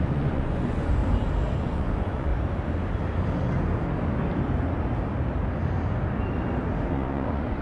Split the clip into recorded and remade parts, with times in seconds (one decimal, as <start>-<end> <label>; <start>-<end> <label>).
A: 0.0-1.0 remade; 1.0-1.6 recorded; 1.6-2.3 remade; 2.3-6.9 recorded; 6.9-7.6 remade